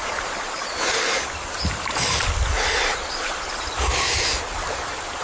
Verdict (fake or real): real